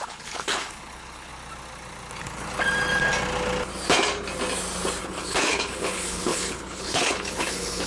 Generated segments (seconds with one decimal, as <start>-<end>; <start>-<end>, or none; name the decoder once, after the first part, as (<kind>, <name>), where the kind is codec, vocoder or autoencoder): 0.0-1.3 (codec, HILCodec); 5.0-7.9